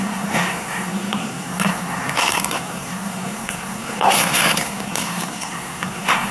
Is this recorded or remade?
remade